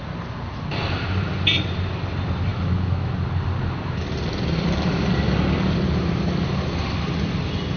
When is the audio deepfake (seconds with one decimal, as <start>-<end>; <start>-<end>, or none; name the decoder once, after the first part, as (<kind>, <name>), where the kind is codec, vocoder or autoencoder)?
2.5-3.1 (autoencoder, DAC-VAE)